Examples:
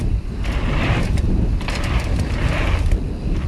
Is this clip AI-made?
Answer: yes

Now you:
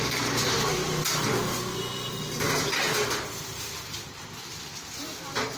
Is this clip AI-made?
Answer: no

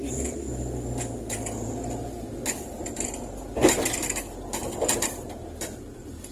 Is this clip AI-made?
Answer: no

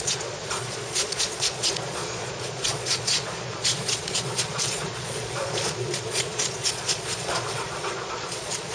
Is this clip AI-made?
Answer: yes